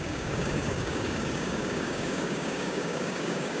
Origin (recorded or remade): remade